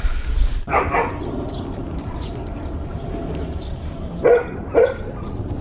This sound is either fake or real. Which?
fake